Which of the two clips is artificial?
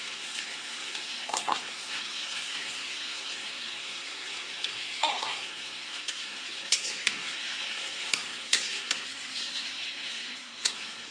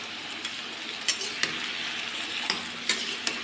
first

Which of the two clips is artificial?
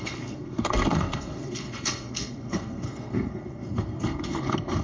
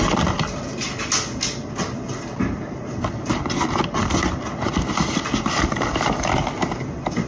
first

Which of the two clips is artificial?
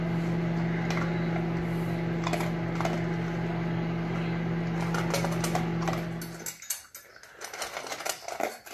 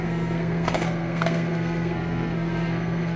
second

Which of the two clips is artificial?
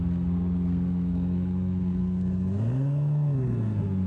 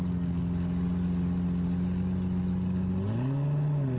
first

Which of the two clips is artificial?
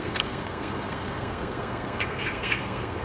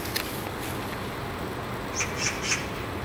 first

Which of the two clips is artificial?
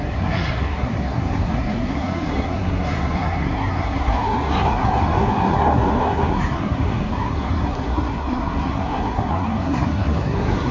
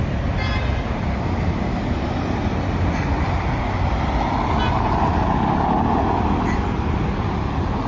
first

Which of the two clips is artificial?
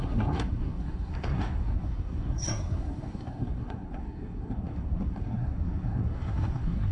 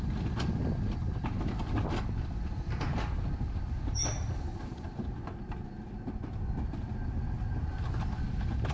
first